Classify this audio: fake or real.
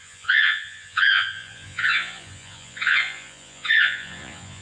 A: fake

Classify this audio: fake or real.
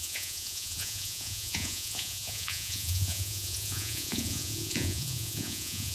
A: fake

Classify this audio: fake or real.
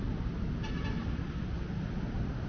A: real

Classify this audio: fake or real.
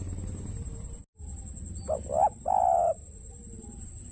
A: real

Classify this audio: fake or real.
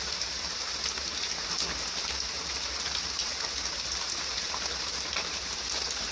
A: real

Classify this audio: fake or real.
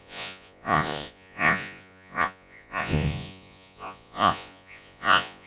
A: fake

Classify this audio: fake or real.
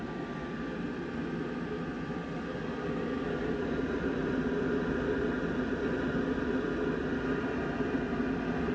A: real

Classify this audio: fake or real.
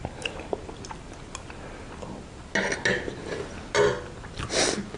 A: real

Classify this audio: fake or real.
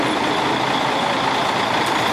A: real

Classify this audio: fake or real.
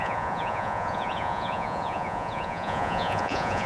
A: fake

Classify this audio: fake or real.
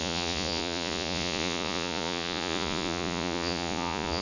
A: fake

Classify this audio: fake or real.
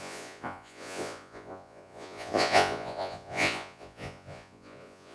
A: fake